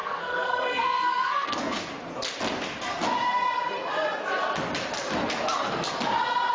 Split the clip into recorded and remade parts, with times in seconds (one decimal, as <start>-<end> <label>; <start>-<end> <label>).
0.0-1.8 remade; 1.8-6.5 recorded